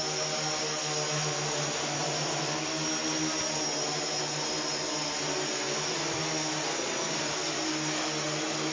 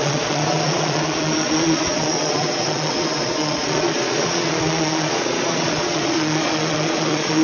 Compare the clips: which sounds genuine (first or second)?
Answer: first